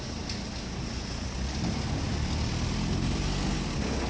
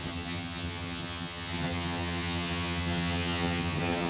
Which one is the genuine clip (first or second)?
first